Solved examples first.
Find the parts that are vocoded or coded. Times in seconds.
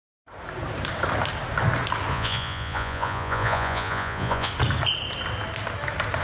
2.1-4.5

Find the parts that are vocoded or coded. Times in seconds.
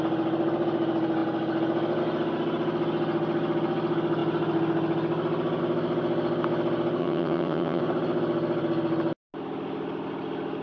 7.0-7.8